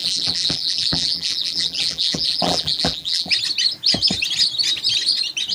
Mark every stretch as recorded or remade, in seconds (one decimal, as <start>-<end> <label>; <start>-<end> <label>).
0.0-3.3 remade; 3.3-5.5 recorded